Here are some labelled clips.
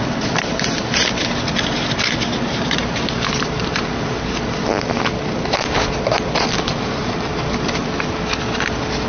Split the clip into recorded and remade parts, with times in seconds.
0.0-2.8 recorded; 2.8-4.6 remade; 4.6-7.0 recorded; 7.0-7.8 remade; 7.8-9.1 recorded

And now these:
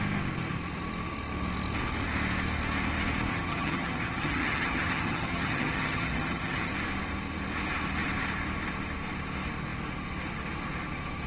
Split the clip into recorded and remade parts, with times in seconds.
0.0-3.3 recorded; 3.3-6.7 remade; 6.7-11.3 recorded

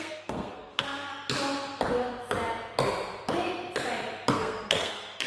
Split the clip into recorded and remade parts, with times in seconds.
0.0-1.1 remade; 1.1-4.3 recorded; 4.3-5.3 remade

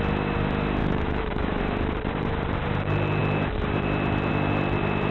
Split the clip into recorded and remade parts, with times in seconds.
0.0-0.8 recorded; 0.8-1.6 remade; 1.6-5.1 recorded